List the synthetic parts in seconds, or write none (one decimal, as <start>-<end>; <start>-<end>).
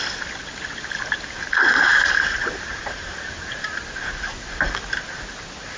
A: 1.9-3.8